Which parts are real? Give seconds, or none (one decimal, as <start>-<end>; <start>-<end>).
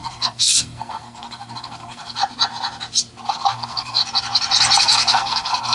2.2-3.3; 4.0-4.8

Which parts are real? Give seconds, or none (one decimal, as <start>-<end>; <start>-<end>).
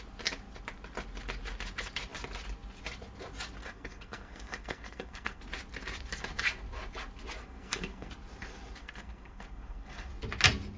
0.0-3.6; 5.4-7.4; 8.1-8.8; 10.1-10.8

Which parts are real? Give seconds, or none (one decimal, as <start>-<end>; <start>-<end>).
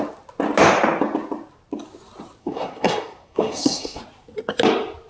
0.0-2.4; 4.0-5.1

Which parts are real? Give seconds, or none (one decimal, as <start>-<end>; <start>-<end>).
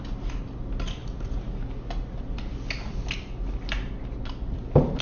0.0-5.0